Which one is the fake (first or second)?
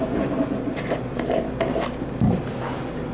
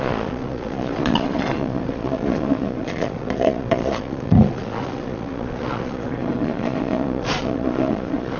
second